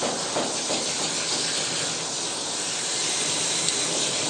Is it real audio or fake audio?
real